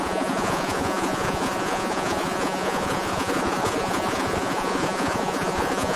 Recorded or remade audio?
remade